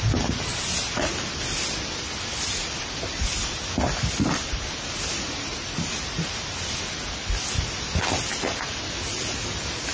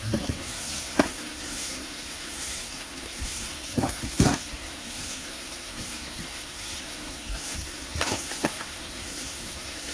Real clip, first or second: first